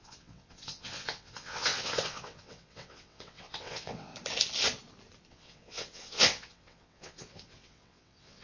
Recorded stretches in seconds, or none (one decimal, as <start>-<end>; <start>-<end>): 4.1-5.3